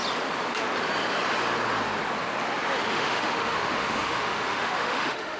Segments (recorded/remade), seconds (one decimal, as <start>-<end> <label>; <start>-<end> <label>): 0.0-2.9 recorded; 2.9-5.4 remade